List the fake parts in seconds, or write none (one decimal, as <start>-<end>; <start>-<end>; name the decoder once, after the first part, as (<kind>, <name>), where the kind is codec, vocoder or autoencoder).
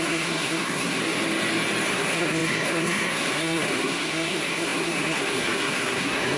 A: 0.0-1.0 (codec, SNAC); 1.9-6.4